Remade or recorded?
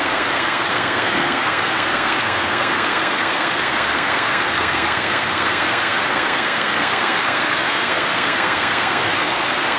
remade